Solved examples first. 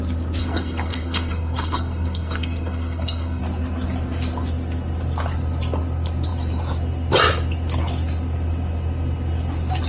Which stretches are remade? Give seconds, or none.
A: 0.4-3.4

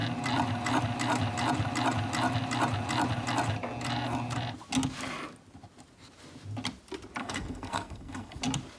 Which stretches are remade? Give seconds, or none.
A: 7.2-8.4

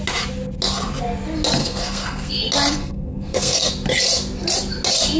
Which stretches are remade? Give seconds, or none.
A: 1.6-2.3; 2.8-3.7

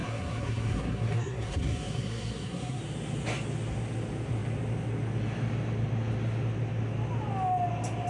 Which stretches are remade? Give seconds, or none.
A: 0.0-2.8

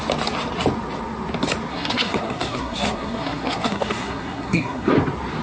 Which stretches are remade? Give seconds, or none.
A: 1.7-4.9

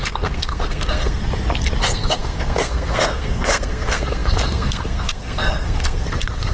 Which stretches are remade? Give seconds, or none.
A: 0.0-1.2; 1.8-6.5